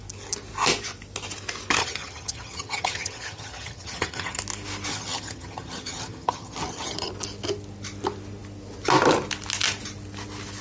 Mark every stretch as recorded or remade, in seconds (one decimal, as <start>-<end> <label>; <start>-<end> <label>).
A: 0.0-1.8 recorded; 1.8-4.4 remade; 4.4-4.9 recorded; 4.9-7.1 remade; 7.1-10.6 recorded